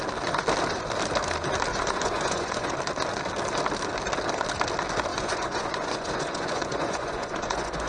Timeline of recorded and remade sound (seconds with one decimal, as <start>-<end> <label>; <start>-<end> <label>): 0.0-1.7 recorded; 1.7-2.7 remade; 2.7-5.1 recorded; 5.1-7.9 remade